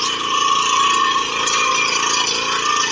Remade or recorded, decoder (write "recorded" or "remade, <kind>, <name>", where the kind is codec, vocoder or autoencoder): recorded